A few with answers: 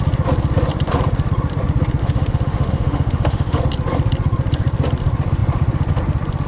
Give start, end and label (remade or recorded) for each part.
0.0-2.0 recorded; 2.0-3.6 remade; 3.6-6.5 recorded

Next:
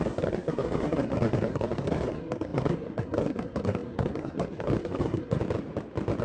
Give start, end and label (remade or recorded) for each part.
0.0-5.4 remade; 5.4-6.2 recorded

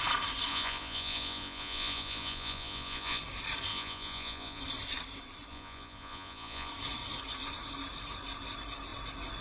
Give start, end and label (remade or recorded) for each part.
0.0-0.5 recorded; 0.5-3.2 remade; 3.2-3.7 recorded; 3.7-4.6 remade; 4.6-5.5 recorded; 5.5-6.7 remade; 6.7-9.4 recorded